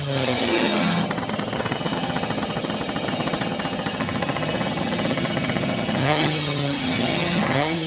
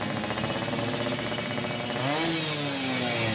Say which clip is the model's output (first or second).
first